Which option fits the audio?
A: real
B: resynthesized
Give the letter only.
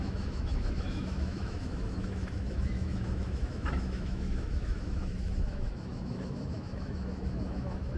B